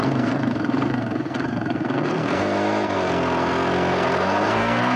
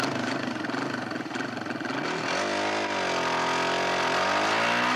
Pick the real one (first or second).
second